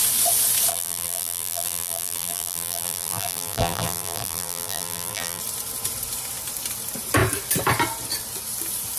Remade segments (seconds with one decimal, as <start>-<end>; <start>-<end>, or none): 0.7-5.4